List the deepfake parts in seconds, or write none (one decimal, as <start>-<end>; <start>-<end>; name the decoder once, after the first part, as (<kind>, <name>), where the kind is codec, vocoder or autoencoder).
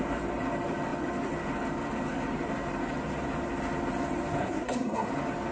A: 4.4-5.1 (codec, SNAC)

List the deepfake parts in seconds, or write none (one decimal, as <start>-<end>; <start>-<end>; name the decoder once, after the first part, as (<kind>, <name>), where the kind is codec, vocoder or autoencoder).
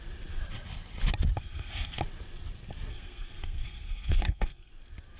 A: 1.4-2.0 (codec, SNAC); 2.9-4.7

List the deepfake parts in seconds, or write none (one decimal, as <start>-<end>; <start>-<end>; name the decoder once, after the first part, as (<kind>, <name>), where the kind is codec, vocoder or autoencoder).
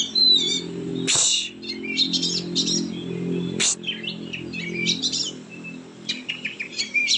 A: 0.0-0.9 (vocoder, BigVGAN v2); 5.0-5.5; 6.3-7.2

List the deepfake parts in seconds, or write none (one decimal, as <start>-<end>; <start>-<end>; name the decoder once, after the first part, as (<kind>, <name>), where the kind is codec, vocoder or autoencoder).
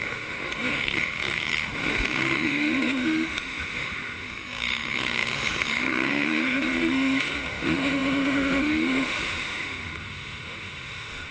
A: 0.0-11.3 (autoencoder, DAC-VAE)